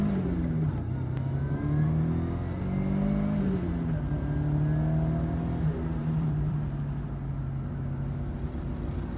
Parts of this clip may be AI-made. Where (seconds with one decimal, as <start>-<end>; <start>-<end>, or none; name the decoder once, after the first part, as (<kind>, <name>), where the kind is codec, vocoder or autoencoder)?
6.0-6.7 (vocoder, BigVGAN v2)